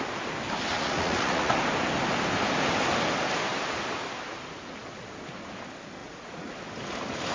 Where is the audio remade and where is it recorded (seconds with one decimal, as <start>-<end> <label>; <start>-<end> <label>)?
0.0-0.7 recorded; 0.7-1.5 remade; 1.5-6.0 recorded; 6.0-6.5 remade; 6.5-7.3 recorded